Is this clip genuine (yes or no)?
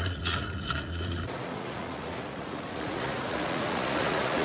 no